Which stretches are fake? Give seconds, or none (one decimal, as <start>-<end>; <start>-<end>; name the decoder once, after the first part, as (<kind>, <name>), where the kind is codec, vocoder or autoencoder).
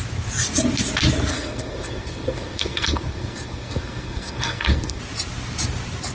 1.3-5.0 (codec, SNAC)